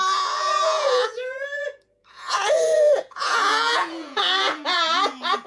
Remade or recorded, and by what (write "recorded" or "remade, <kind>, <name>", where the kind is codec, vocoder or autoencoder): remade, vocoder, Vocos